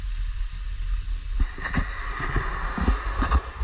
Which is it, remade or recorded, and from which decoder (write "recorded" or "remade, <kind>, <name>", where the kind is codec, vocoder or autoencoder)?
recorded